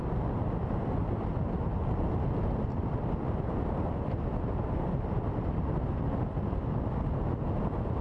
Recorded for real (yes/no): yes